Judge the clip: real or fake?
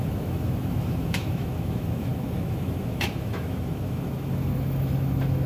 fake